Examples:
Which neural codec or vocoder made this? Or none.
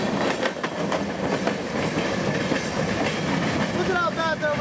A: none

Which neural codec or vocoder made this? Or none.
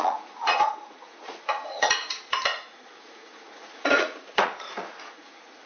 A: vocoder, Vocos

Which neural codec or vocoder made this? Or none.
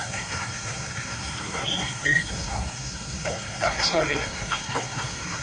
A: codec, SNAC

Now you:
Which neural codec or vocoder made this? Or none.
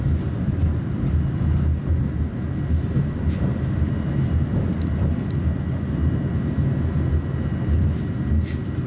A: none